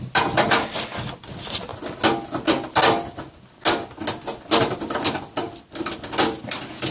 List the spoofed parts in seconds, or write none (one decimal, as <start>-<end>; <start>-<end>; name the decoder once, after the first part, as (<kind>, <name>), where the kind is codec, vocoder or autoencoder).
none